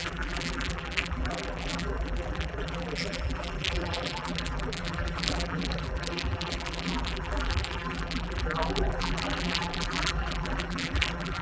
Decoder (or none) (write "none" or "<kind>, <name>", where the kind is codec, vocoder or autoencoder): vocoder, BigVGAN v2